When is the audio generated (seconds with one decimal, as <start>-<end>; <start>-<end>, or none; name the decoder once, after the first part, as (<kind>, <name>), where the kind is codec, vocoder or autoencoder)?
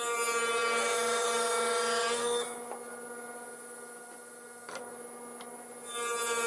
none